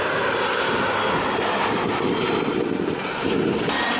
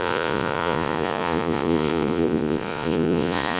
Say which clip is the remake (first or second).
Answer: second